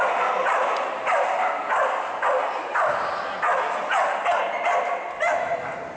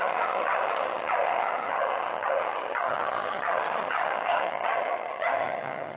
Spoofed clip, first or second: second